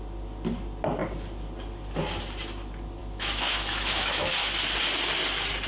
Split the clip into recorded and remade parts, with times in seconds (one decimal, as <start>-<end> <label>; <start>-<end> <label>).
0.0-3.0 recorded; 3.0-4.3 remade; 4.3-5.7 recorded